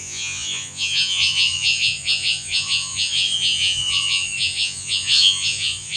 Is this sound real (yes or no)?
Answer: no